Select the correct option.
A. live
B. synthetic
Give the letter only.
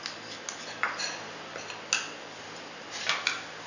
A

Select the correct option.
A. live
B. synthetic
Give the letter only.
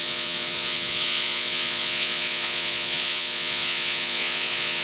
B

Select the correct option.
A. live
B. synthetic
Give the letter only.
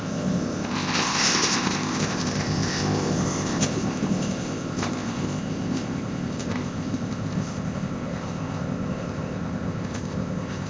B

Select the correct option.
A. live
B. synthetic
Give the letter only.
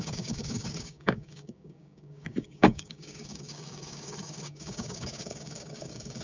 B